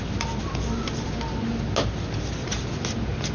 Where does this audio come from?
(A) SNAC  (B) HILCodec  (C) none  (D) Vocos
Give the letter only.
C